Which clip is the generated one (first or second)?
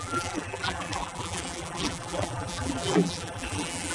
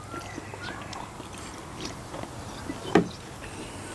first